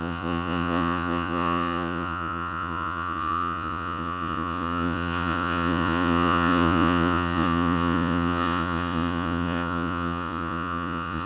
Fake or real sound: fake